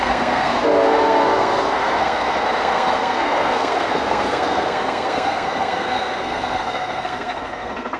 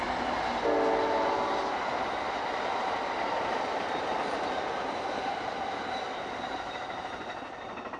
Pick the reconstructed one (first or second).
first